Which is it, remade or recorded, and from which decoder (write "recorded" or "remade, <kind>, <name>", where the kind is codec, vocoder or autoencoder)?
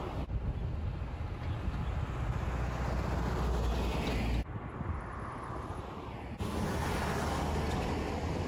recorded